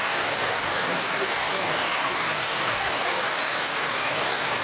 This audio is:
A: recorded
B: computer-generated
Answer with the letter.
B